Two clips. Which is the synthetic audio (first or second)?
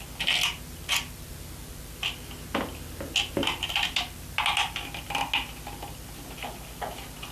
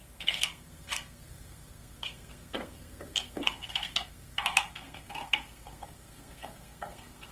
second